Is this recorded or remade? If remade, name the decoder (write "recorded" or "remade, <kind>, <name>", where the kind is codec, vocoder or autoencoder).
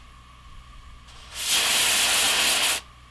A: recorded